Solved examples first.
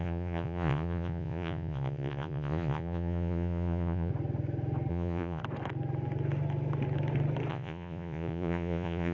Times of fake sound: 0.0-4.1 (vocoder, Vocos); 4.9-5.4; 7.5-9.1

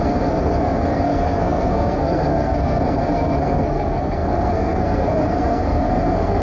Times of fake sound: 0.0-6.4 (codec, SNAC)

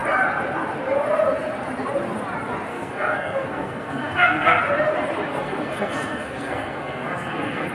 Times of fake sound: 2.7-4.6 (codec, SNAC); 5.3-7.7

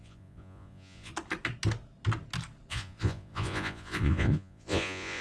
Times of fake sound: 0.0-1.1 (vocoder, Vocos); 2.7-5.2